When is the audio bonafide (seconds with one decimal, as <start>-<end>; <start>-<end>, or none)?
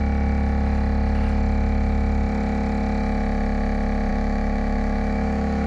0.0-4.1